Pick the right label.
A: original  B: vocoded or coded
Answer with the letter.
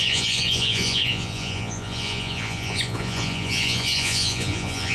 B